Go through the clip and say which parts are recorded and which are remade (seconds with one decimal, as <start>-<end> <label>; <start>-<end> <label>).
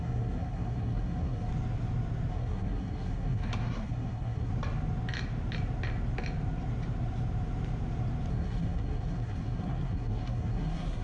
0.0-1.5 remade; 1.5-2.3 recorded; 2.3-4.5 remade; 4.5-8.3 recorded; 8.3-11.0 remade